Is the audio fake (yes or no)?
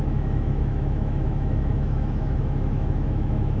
yes